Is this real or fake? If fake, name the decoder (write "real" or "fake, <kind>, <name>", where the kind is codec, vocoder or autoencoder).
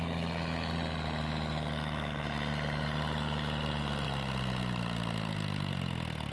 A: real